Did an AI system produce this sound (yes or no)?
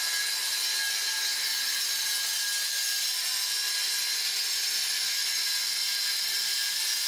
no